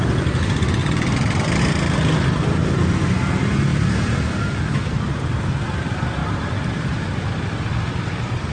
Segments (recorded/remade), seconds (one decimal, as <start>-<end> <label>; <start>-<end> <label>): 0.0-0.8 recorded; 0.8-1.6 remade; 1.6-3.7 recorded; 3.7-4.6 remade; 4.6-8.5 recorded